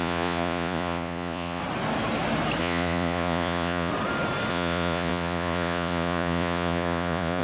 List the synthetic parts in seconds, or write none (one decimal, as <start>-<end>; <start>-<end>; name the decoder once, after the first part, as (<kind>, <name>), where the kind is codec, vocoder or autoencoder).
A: 0.0-1.6 (vocoder, Vocos); 2.6-3.9; 4.5-7.4